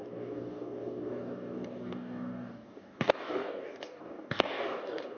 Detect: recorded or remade remade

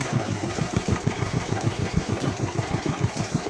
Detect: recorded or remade remade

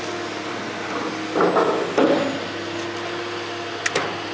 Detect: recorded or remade recorded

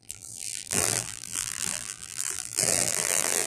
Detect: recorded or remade remade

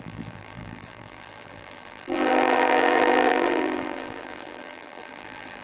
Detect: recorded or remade remade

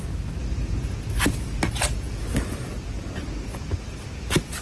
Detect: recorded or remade recorded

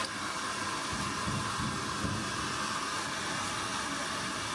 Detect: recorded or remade recorded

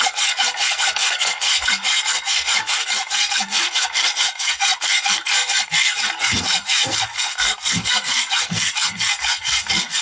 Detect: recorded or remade remade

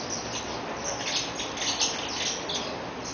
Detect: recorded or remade recorded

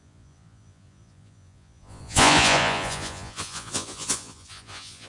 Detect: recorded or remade remade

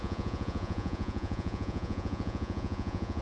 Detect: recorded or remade remade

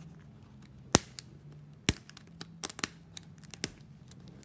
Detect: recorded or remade recorded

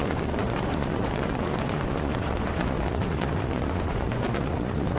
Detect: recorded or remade remade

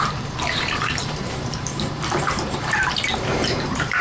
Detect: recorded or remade remade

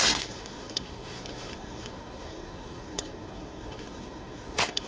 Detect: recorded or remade remade